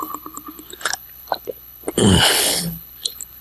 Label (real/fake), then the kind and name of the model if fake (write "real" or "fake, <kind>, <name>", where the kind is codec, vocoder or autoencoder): fake, codec, HILCodec